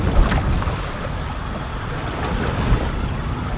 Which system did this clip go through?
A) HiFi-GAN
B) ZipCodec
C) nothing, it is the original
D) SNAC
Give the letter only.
C